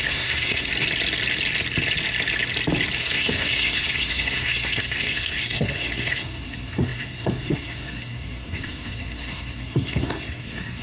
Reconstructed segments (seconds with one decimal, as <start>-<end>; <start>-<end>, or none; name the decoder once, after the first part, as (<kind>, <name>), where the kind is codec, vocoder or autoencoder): 0.0-0.7 (codec, SNAC); 3.0-10.8